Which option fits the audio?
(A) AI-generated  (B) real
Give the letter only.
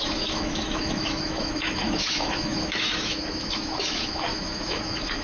A